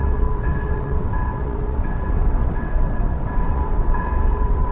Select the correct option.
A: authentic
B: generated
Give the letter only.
B